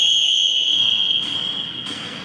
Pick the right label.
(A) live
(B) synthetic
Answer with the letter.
B